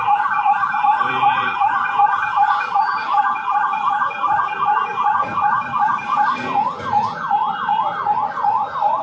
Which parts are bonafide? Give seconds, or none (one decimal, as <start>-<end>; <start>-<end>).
none

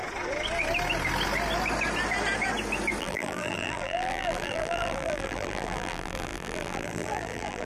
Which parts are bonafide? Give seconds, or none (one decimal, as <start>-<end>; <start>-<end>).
0.0-3.0

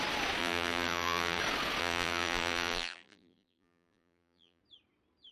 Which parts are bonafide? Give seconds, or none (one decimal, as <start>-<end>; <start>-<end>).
0.0-0.4; 1.4-1.8; 4.6-5.3